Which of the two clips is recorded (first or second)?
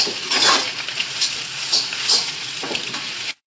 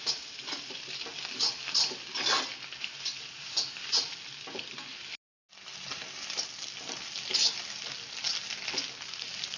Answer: second